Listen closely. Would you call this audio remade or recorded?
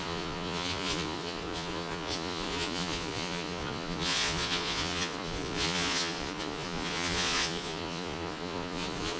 remade